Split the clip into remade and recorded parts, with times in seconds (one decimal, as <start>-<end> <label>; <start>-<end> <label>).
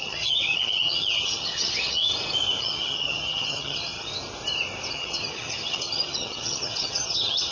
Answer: 0.0-2.1 remade; 2.1-2.6 recorded; 2.6-4.1 remade; 4.1-4.9 recorded; 4.9-7.5 remade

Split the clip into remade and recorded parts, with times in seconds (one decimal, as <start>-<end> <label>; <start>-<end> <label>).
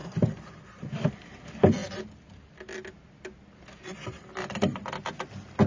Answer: 0.0-5.7 recorded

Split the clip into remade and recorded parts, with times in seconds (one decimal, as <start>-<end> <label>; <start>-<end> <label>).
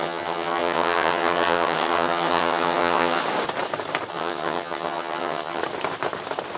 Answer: 0.0-3.2 remade; 3.2-4.1 recorded; 4.1-5.6 remade; 5.6-6.6 recorded